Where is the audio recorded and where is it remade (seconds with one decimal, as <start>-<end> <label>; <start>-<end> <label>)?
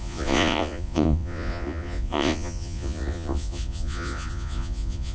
0.0-5.1 remade